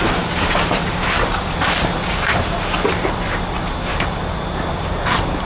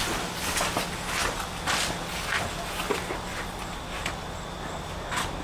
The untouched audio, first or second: second